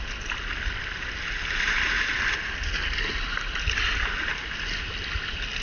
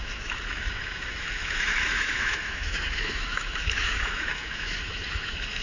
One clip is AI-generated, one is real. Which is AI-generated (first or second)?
second